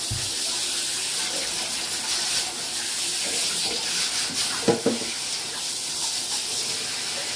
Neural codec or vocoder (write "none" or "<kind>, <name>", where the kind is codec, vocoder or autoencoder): none